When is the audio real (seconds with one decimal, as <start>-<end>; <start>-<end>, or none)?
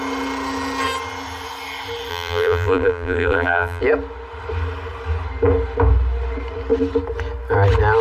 0.0-2.1; 3.8-8.0